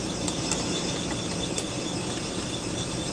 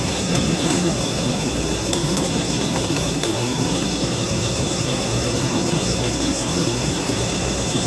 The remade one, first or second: second